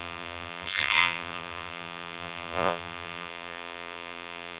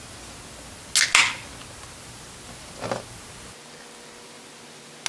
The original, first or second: second